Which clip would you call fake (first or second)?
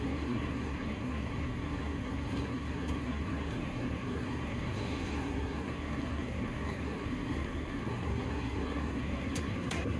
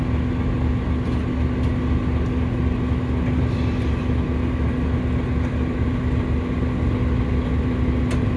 first